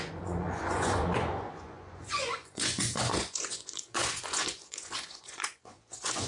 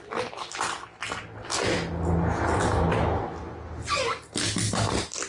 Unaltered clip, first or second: second